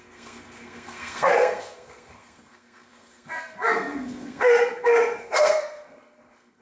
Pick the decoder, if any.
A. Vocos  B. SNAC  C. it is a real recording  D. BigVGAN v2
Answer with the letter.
B